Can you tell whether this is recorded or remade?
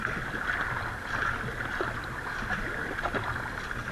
recorded